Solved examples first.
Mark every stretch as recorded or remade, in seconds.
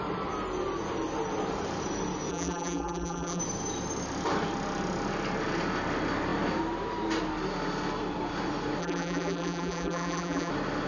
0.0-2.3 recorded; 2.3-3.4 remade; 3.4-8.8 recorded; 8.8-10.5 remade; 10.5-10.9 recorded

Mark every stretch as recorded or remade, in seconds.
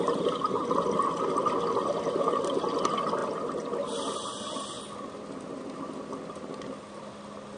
0.0-7.6 recorded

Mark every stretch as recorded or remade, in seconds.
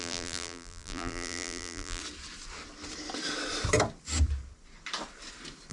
0.0-2.0 remade; 2.0-5.7 recorded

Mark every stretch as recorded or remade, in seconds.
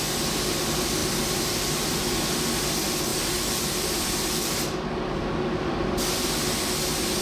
0.0-1.0 recorded; 1.0-2.0 remade; 2.0-3.1 recorded; 3.1-6.3 remade; 6.3-7.2 recorded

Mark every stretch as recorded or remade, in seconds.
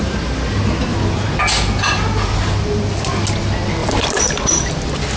0.0-3.8 recorded; 3.8-4.5 remade; 4.5-5.2 recorded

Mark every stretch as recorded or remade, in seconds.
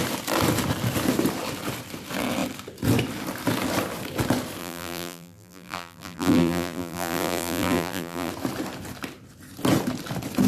0.0-4.6 recorded; 4.6-8.3 remade; 8.3-10.5 recorded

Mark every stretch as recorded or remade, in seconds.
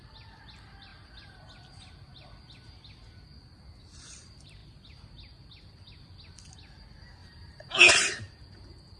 0.0-7.2 recorded; 7.2-7.9 remade; 7.9-9.0 recorded